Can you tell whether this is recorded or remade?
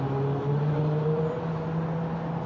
recorded